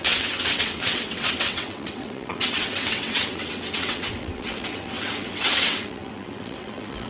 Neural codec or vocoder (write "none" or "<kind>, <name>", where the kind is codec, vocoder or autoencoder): vocoder, WaveNeXt